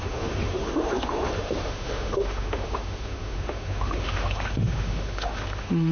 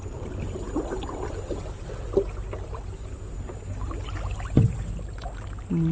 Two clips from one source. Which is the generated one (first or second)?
first